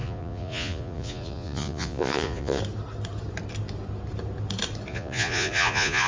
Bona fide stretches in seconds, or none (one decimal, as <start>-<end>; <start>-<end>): 2.6-4.9